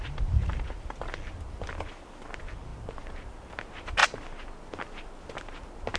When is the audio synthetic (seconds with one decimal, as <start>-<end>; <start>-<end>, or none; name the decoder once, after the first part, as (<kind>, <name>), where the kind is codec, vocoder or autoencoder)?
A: none